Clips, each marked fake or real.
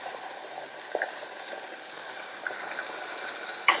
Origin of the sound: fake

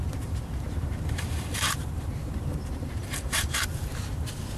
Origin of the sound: fake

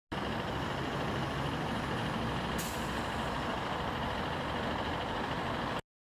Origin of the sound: real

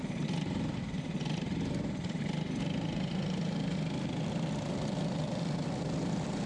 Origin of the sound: fake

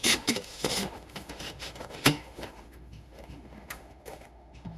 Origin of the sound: fake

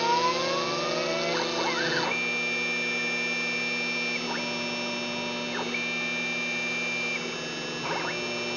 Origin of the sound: real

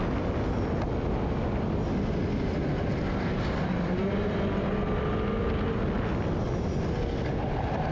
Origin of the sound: real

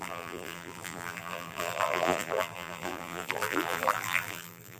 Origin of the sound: fake